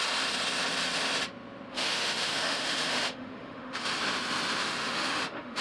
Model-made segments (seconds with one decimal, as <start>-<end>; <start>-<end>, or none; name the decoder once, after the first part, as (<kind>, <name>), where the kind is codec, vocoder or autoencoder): 1.7-4.0 (autoencoder, DAC-VAE); 4.6-5.6